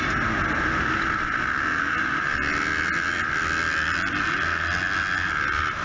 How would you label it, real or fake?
real